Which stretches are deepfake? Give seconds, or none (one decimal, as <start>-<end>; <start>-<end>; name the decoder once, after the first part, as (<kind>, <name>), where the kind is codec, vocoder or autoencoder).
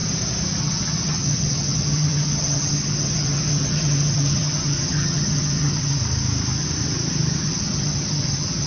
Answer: 0.6-6.0 (vocoder, HiFi-GAN); 7.4-8.7